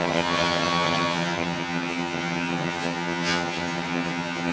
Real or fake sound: fake